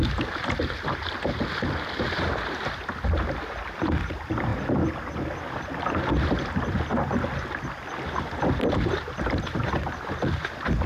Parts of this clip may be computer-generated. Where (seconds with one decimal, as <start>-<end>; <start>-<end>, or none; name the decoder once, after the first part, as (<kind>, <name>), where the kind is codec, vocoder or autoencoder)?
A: 0.0-4.5 (vocoder, BigVGAN v2); 6.8-10.9